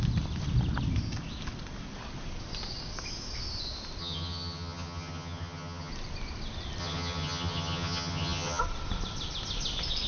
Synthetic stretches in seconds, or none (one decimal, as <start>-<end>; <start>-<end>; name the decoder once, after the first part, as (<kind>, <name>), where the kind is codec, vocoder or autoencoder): 4.0-5.9 (vocoder, HiFi-GAN); 6.8-8.6